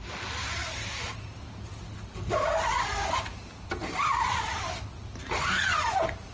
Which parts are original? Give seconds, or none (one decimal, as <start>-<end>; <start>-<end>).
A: 0.0-6.3